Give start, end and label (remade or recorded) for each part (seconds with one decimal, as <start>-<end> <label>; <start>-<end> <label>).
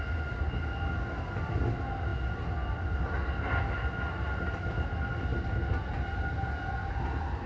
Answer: 0.0-7.5 recorded